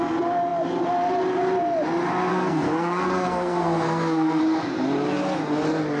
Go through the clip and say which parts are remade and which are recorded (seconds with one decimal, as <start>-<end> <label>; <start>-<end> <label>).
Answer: 0.0-2.3 recorded; 2.3-4.4 remade; 4.4-6.0 recorded